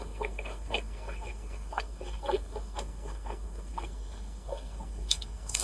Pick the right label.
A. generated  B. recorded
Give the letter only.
A